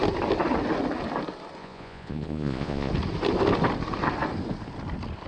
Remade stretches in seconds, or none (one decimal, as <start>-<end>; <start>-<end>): 1.6-2.9